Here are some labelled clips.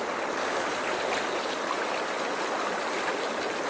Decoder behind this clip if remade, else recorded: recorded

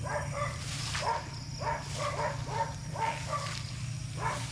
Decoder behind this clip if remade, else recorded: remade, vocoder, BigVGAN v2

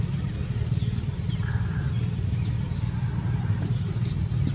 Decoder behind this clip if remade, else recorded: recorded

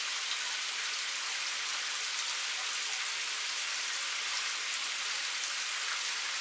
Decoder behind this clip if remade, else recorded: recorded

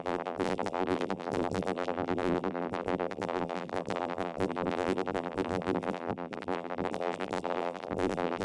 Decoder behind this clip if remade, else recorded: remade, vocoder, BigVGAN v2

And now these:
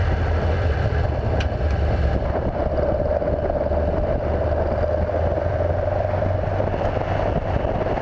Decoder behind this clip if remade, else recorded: remade, vocoder, BigVGAN v2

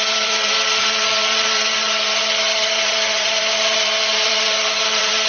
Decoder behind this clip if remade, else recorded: remade, vocoder, BigVGAN v2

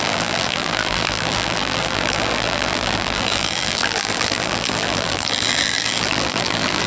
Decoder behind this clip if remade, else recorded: remade, vocoder, BigVGAN v2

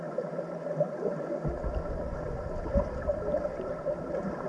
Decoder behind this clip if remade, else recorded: remade, vocoder, BigVGAN v2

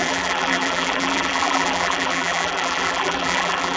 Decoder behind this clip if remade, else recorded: remade, vocoder, BigVGAN v2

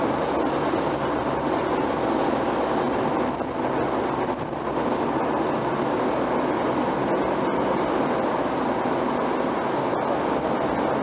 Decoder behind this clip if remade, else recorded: recorded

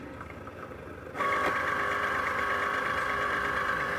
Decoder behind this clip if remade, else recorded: remade, vocoder, BigVGAN v2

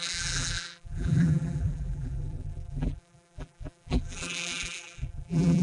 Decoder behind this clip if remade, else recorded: remade, vocoder, BigVGAN v2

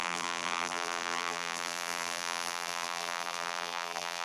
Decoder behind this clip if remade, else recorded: remade, vocoder, BigVGAN v2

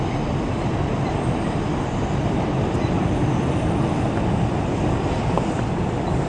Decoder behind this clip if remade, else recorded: recorded